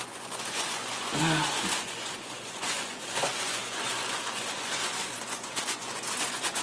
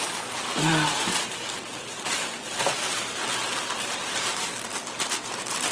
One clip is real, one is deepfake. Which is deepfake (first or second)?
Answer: first